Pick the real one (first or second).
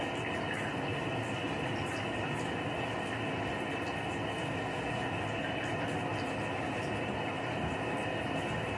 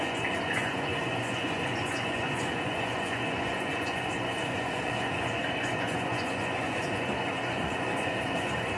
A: first